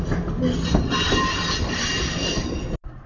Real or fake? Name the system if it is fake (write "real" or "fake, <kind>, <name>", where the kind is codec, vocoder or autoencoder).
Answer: real